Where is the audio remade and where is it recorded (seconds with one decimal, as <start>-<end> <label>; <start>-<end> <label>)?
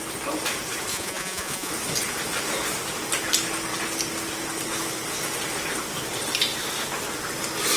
0.0-0.9 recorded; 0.9-1.7 remade; 1.7-7.8 recorded